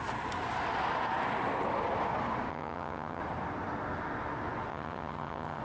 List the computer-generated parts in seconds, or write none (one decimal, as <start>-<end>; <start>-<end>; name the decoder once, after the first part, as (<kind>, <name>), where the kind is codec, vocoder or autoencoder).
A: 2.5-3.2 (vocoder, HiFi-GAN); 4.7-5.6